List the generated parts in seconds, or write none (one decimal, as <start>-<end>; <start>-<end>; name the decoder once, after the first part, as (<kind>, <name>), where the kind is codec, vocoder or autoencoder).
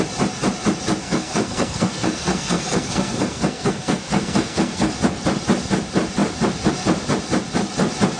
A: 1.0-4.9 (codec, SNAC)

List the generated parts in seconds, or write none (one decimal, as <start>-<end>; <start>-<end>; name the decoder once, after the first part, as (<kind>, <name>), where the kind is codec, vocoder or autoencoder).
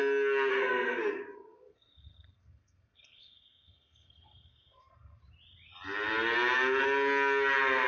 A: 0.5-5.2 (codec, SNAC)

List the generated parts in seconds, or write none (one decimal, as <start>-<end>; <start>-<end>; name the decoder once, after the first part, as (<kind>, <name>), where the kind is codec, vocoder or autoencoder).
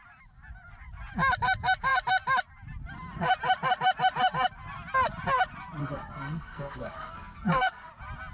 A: 5.8-7.9 (codec, SNAC)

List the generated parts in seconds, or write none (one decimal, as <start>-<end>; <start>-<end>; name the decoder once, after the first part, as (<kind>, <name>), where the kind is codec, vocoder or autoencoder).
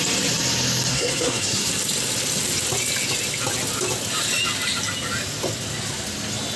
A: 0.9-1.7 (codec, SNAC)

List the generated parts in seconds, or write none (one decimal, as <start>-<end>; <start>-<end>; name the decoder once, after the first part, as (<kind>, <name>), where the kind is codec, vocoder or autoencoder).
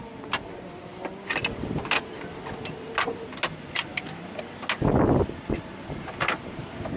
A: none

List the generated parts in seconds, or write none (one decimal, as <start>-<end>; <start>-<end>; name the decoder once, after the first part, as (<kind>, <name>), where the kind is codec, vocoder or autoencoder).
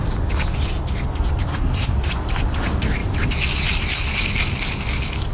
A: 1.5-2.1 (codec, SNAC)